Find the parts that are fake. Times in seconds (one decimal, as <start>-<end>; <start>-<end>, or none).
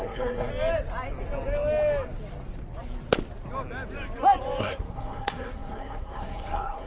0.0-0.5; 4.6-6.9